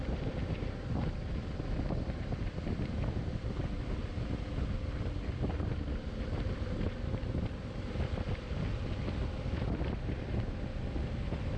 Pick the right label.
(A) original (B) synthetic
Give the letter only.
A